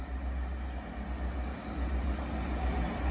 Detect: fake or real real